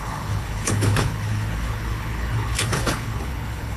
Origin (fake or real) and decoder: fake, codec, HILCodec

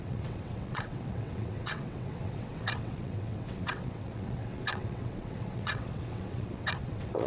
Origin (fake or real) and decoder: fake, vocoder, WaveNeXt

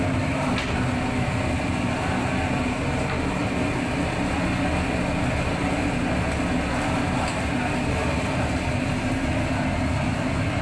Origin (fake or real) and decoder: real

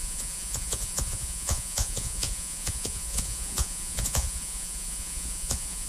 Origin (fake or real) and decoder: fake, vocoder, Vocos